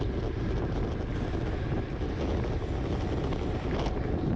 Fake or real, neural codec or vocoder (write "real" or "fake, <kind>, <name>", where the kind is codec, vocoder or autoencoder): real